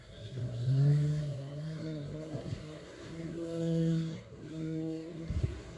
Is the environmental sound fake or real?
fake